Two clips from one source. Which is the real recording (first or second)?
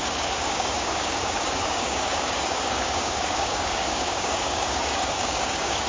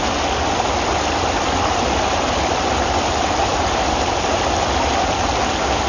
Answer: second